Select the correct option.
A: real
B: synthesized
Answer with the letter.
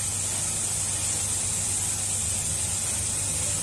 A